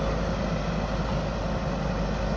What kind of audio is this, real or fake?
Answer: real